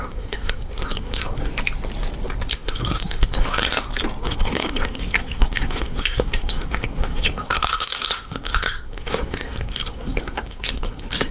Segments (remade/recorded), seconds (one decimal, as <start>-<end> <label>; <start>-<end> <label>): 0.0-1.5 remade; 1.5-2.5 recorded; 2.5-3.6 remade; 3.6-4.2 recorded; 4.2-11.3 remade